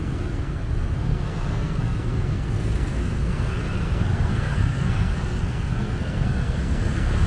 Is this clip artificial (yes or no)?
yes